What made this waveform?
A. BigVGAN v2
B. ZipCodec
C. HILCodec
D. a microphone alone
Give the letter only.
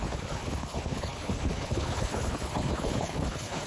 C